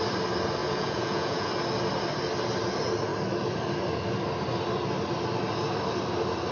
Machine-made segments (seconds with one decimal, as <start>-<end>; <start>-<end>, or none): 0.6-1.5